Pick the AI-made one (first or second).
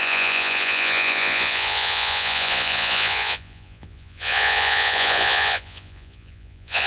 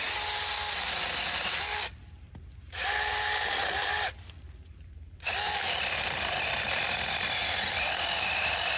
first